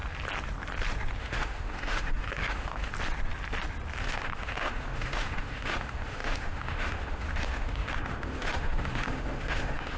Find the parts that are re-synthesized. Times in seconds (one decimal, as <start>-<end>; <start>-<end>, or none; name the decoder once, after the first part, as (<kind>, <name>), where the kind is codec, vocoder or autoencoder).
1.2-2.9 (autoencoder, DAC-VAE); 4.0-10.0